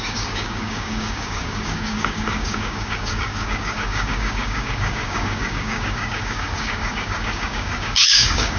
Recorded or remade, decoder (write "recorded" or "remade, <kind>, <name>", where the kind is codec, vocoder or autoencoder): remade, codec, DAC